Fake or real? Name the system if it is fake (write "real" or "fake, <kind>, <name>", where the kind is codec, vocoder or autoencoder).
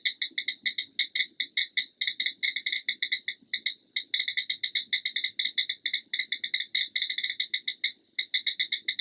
real